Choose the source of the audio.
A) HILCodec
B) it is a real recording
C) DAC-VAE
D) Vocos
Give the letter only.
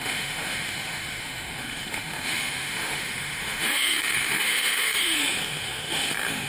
C